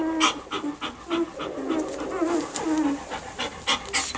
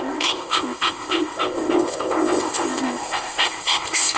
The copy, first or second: second